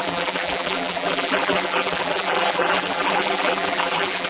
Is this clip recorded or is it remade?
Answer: remade